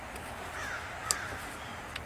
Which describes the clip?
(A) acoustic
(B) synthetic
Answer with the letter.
A